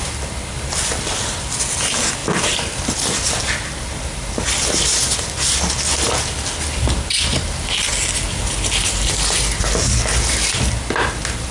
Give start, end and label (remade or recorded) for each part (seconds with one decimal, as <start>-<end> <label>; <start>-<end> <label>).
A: 0.0-11.5 recorded